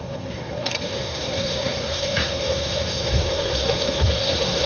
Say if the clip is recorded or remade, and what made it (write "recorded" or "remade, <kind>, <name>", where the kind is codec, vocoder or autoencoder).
remade, codec, SNAC